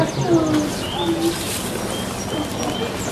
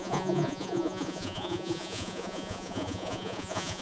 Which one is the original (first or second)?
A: first